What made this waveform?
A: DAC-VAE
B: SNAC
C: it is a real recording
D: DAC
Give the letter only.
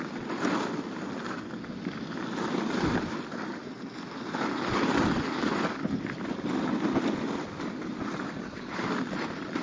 C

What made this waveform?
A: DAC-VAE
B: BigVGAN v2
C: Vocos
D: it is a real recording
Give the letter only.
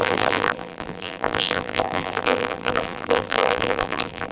B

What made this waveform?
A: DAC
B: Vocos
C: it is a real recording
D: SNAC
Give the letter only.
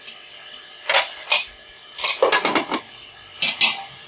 C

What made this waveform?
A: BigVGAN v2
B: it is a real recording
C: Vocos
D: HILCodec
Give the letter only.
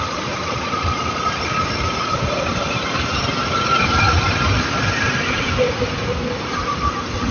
A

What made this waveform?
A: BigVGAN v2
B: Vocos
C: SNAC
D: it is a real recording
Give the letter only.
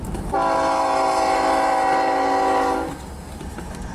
D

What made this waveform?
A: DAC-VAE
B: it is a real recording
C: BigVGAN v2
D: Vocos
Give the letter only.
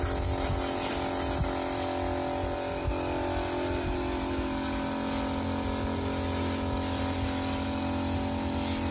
B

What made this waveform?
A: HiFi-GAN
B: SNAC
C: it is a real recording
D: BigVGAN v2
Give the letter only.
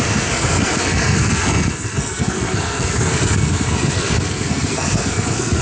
B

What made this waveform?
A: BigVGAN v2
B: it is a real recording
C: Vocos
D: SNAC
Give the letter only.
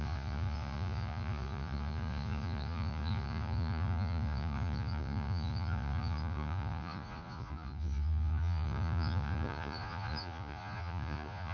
C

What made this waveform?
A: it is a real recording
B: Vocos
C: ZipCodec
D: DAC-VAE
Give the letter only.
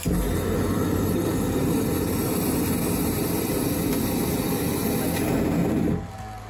A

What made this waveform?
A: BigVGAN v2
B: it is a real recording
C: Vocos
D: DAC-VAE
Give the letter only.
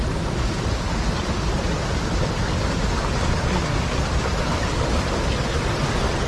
B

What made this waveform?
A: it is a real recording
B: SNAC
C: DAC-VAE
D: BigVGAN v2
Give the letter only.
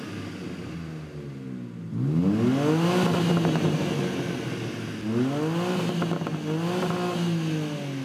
A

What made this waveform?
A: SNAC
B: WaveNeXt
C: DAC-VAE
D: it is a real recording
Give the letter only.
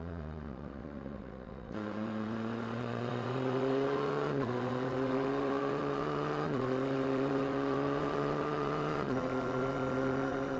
B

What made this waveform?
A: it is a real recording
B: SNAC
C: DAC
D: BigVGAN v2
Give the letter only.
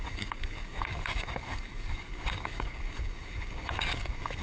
C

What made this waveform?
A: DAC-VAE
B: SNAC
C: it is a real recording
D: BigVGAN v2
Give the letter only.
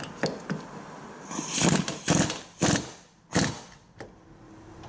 D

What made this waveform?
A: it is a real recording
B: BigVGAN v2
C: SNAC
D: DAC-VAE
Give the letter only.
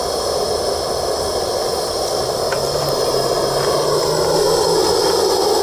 A